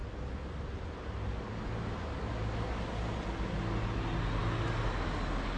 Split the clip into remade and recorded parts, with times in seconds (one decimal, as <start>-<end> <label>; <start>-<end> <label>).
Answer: 0.0-5.6 recorded

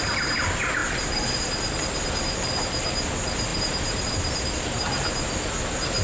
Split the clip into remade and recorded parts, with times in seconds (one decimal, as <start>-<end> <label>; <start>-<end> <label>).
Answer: 0.0-3.5 recorded; 3.5-4.0 remade; 4.0-6.0 recorded

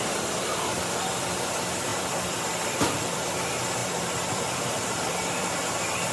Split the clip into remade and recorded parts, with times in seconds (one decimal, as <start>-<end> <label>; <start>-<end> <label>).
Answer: 0.0-1.9 recorded; 1.9-3.2 remade; 3.2-3.8 recorded; 3.8-5.5 remade; 5.5-6.1 recorded

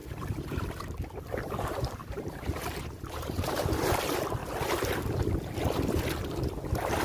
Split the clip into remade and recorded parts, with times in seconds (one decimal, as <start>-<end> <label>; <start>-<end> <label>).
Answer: 0.0-0.5 remade; 0.5-2.0 recorded; 2.0-3.6 remade; 3.6-7.0 recorded

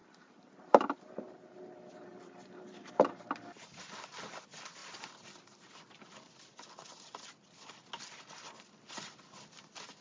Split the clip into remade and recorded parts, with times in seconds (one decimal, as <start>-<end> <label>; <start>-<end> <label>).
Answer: 0.0-3.1 remade; 3.1-10.0 recorded

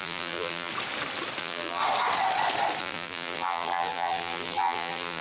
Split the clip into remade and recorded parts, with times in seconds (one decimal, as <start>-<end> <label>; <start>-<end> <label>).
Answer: 0.0-0.7 remade; 0.7-1.4 recorded; 1.4-1.8 remade; 1.8-2.8 recorded; 2.8-5.2 remade